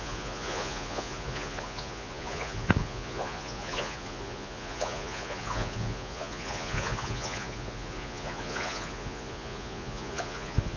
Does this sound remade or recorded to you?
remade